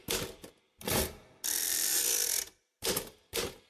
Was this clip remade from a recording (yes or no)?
no